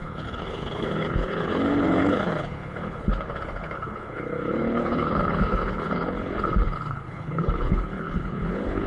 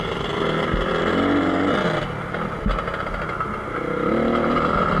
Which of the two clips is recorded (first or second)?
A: second